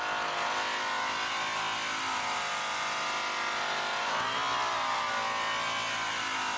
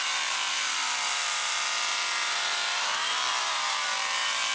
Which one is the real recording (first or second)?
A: first